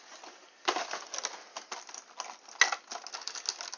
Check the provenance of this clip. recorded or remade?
recorded